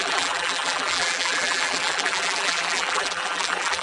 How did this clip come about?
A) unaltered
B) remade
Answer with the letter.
B